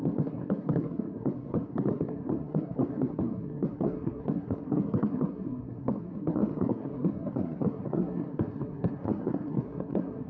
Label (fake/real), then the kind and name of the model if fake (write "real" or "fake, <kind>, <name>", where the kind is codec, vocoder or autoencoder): fake, codec, SNAC